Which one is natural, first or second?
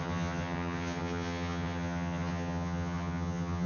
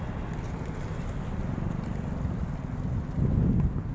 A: second